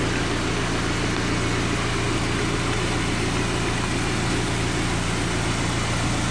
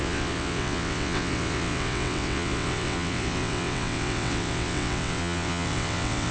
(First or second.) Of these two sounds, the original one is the first